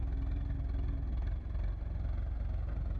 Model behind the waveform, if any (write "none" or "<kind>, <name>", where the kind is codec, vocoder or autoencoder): none